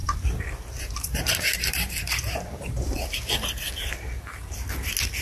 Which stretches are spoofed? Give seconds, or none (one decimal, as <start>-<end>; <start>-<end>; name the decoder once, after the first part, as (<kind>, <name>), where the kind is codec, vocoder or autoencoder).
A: 0.0-3.1 (vocoder, BigVGAN v2)